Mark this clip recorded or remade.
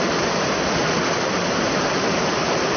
recorded